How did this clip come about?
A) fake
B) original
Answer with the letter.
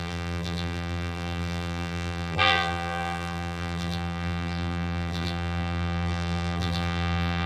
A